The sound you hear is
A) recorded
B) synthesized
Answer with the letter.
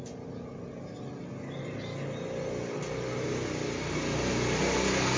A